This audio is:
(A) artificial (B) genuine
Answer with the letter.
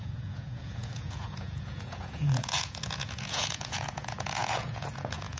A